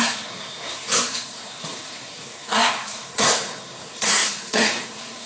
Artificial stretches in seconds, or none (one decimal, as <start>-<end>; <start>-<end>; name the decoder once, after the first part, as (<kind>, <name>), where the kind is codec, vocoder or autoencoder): 0.0-5.3 (codec, SNAC)